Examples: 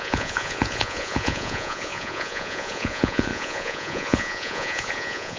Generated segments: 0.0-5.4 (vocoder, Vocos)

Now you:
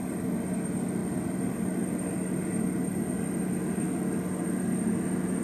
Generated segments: none